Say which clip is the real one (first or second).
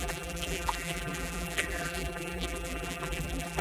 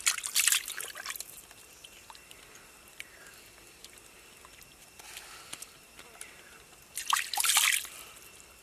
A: second